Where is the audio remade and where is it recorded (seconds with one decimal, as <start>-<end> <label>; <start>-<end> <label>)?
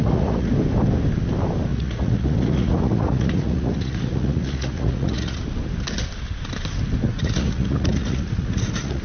0.0-0.5 remade; 0.5-1.7 recorded; 1.7-5.4 remade; 5.4-7.1 recorded; 7.1-9.0 remade